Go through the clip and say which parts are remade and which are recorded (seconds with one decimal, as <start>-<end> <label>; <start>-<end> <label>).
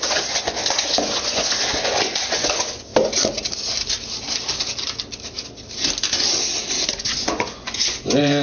0.0-2.9 remade; 2.9-6.9 recorded; 6.9-8.4 remade